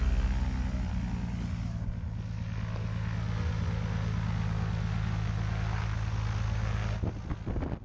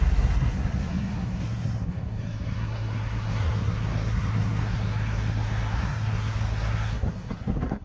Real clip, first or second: first